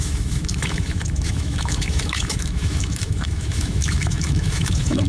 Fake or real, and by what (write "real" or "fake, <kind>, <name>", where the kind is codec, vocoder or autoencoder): fake, autoencoder, DAC-VAE